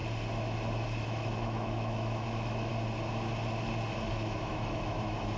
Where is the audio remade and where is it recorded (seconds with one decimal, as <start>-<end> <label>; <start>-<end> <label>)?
0.0-1.0 recorded; 1.0-2.7 remade; 2.7-4.1 recorded; 4.1-5.4 remade